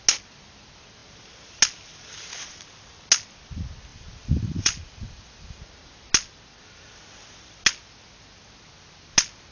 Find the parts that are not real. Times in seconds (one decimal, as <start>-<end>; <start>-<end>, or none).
3.9-5.6